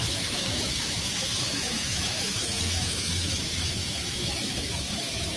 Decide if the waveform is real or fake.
fake